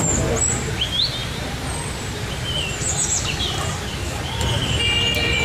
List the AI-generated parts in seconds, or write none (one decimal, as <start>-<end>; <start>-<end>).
1.2-4.0